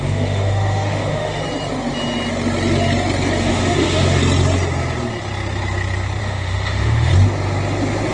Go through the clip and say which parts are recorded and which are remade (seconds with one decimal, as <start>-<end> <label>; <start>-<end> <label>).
0.0-1.4 remade; 1.4-3.4 recorded; 3.4-4.2 remade; 4.2-6.2 recorded; 6.2-7.1 remade; 7.1-8.1 recorded